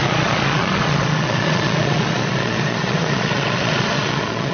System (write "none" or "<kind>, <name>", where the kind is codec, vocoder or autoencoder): vocoder, Vocos